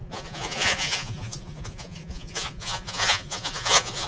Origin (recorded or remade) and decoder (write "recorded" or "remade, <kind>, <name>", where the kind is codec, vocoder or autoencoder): remade, vocoder, Vocos